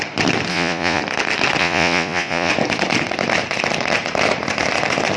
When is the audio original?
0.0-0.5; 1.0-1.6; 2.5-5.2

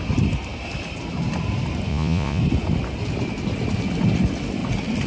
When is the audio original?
0.0-1.9; 2.4-5.1

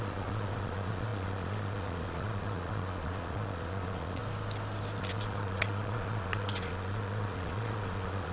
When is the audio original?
4.2-5.0